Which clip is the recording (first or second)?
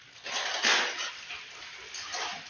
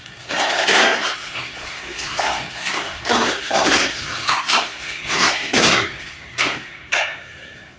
first